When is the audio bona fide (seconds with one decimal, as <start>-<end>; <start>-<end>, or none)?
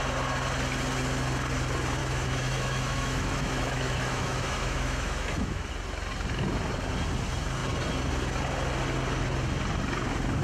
0.0-2.0; 5.7-10.4